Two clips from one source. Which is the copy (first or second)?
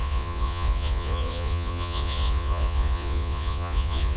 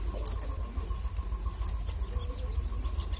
first